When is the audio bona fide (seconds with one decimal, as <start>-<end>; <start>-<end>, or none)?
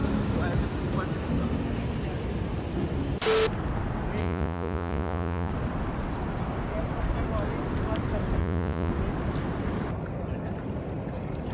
0.0-4.2; 5.5-8.4; 8.9-11.5